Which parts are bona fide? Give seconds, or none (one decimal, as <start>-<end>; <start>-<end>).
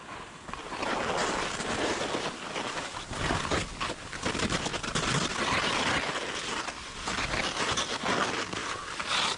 0.0-8.6